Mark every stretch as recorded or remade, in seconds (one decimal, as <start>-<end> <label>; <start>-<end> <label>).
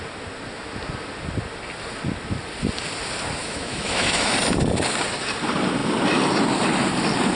0.0-3.4 recorded; 3.4-4.3 remade; 4.3-7.3 recorded